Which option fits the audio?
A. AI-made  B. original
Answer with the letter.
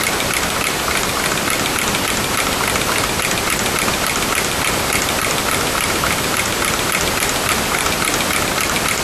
A